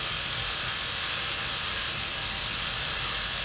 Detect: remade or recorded recorded